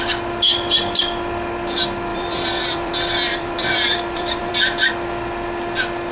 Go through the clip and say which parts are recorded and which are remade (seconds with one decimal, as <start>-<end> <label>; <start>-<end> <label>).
0.0-2.1 recorded; 2.1-2.9 remade; 2.9-3.3 recorded; 3.3-4.9 remade; 4.9-6.1 recorded